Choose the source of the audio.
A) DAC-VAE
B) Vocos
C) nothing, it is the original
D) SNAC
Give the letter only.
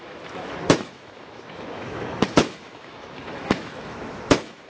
A